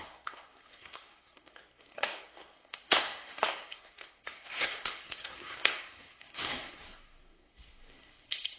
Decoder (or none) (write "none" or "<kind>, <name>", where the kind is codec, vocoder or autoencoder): codec, SNAC